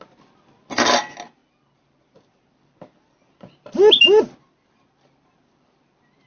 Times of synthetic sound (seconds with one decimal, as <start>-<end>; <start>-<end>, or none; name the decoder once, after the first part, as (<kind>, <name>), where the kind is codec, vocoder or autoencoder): none